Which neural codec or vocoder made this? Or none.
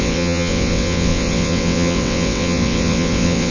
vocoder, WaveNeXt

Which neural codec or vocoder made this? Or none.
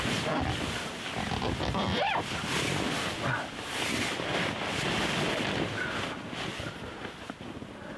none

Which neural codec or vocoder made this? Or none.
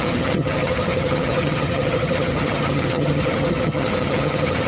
vocoder, HiFi-GAN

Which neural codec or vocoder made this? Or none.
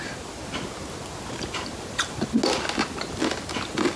none